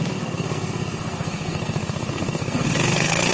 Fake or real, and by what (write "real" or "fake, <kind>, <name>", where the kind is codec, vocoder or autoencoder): fake, codec, SNAC